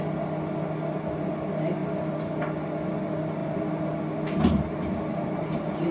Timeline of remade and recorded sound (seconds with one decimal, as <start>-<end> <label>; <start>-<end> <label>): 0.0-3.4 recorded; 3.4-4.0 remade; 4.0-5.1 recorded; 5.1-5.9 remade